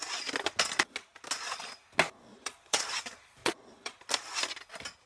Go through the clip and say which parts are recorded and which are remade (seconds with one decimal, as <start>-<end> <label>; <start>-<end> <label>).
0.0-2.3 recorded; 2.3-2.8 remade; 2.8-3.4 recorded; 3.4-4.0 remade; 4.0-5.1 recorded